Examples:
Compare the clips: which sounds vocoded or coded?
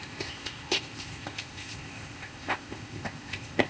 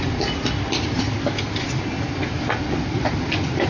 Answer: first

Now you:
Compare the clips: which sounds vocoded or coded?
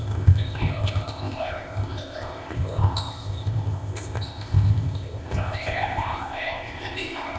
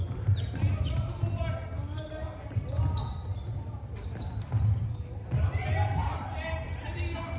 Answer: first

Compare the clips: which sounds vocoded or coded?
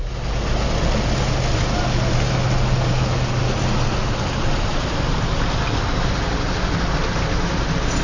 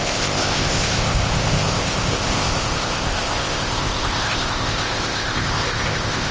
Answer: second